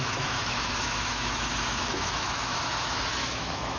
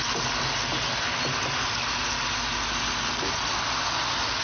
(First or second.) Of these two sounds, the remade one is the first